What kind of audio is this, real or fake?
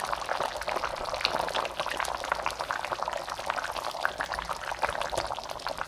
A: real